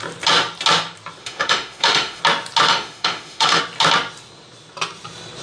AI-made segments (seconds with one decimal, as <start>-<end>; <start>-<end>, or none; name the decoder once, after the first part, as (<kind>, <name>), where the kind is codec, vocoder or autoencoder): 1.2-2.2 (autoencoder, DAC-VAE); 2.7-3.6